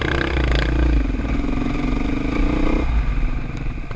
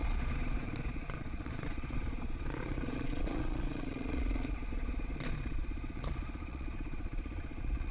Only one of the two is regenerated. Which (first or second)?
second